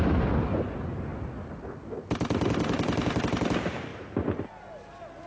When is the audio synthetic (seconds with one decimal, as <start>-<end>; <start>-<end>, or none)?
none